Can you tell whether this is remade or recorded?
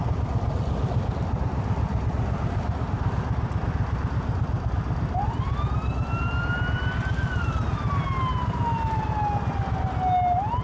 recorded